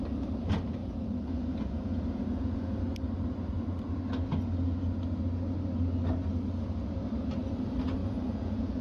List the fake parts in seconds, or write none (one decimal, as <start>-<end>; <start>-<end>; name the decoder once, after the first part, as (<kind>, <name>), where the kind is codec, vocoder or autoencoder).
0.8-2.8 (vocoder, Vocos); 8.0-8.8